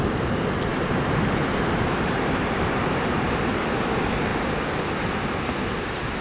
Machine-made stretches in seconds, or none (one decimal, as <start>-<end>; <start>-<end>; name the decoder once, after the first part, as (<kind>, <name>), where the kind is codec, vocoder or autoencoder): 0.7-3.4 (vocoder, BigVGAN v2)